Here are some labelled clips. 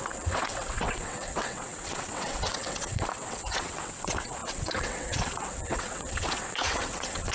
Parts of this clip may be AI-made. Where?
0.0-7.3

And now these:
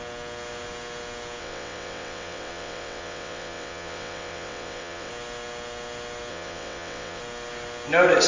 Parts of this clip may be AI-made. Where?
1.4-5.1; 6.3-7.2

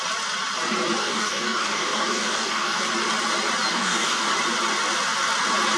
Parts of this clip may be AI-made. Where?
1.0-2.8; 3.7-4.3